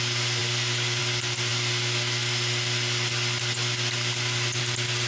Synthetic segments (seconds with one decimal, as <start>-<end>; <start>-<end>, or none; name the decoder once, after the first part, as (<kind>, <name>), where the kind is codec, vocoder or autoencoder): none